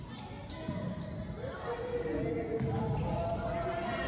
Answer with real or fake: real